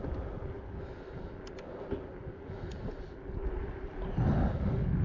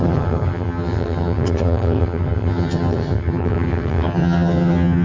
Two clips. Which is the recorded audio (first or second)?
first